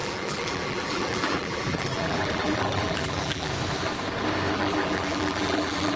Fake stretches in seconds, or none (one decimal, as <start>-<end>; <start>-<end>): 0.0-3.5; 4.5-6.0